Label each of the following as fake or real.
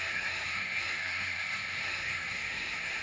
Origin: fake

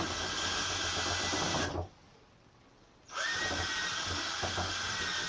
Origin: real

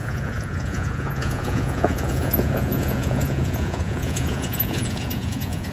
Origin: fake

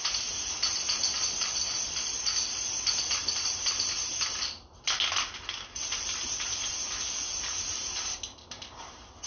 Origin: real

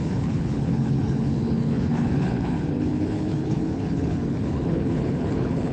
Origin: fake